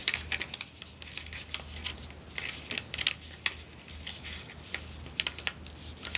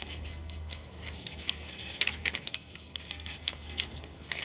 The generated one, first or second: second